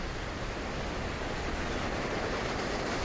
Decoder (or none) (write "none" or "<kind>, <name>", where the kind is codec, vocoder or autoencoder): none